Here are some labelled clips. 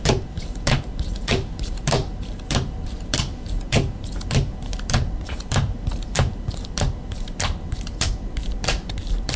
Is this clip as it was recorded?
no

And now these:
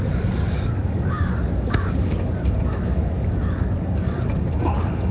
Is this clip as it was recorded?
no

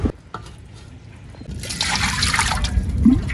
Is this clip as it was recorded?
yes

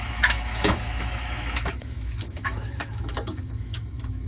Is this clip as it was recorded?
no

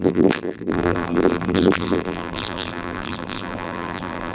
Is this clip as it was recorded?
no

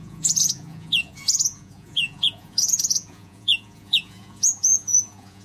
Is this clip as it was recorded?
no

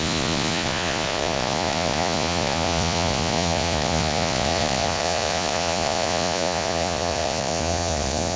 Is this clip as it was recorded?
no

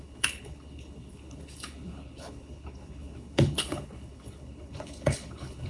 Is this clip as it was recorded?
no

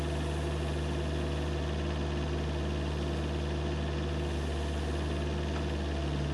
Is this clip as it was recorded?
yes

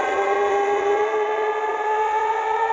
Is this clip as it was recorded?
no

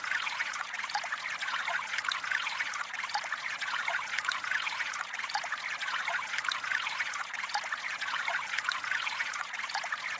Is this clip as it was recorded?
no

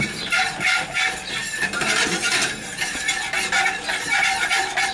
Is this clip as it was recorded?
yes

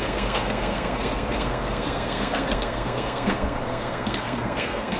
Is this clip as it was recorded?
no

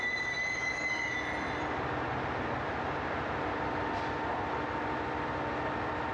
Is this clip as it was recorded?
yes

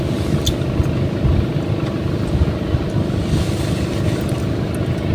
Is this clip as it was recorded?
yes